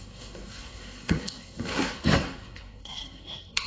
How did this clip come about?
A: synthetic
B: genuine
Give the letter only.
A